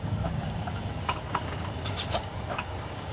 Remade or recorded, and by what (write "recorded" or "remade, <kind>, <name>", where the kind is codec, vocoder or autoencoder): remade, codec, DAC